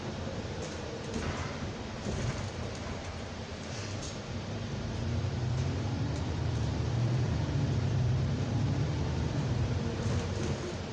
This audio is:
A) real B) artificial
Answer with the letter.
B